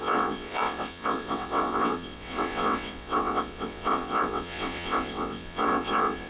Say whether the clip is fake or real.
fake